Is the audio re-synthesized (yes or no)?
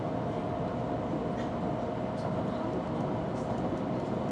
no